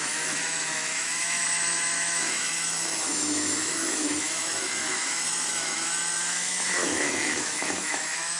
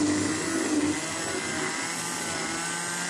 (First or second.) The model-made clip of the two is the first